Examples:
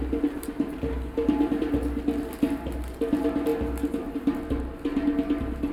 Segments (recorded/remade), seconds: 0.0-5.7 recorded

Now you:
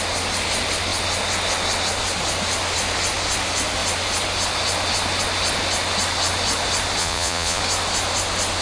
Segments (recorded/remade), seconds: 0.0-7.0 recorded; 7.0-7.6 remade; 7.6-8.6 recorded

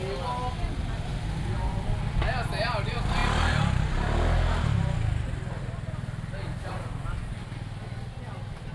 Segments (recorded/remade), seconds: 0.0-8.7 recorded

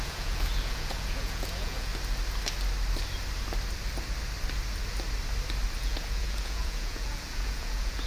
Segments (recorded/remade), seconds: 0.0-1.9 remade; 1.9-5.8 recorded; 5.8-8.1 remade